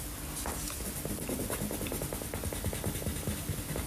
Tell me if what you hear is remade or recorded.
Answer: recorded